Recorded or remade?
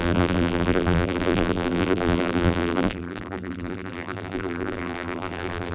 remade